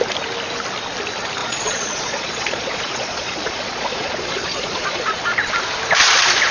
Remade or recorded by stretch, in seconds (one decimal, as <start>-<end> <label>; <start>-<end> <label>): 0.0-1.4 recorded; 1.4-5.2 remade; 5.2-6.5 recorded